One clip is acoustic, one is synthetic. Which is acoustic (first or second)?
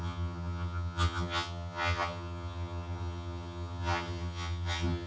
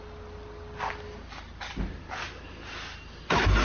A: second